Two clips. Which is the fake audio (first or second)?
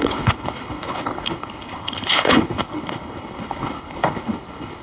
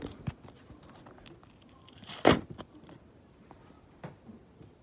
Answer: first